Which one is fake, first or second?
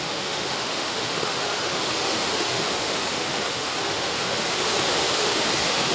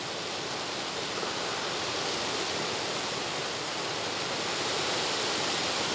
first